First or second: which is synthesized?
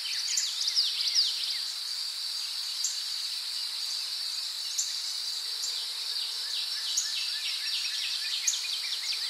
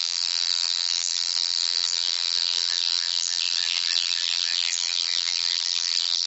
second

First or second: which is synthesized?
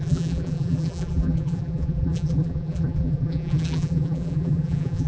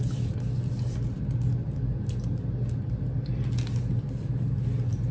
first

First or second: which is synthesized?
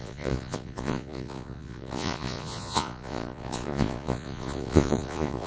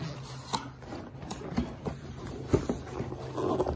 first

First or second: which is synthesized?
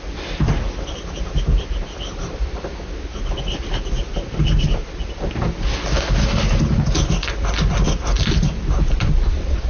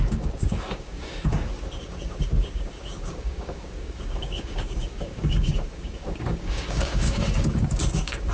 second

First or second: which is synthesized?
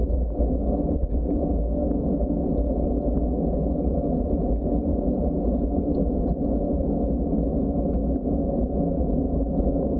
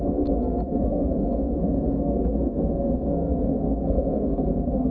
second